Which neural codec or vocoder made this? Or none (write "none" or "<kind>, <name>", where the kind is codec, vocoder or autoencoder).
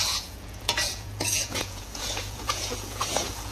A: vocoder, Vocos